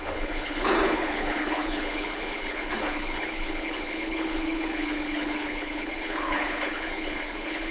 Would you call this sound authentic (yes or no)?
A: no